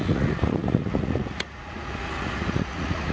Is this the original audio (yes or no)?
no